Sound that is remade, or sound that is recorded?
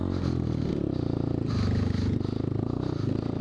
recorded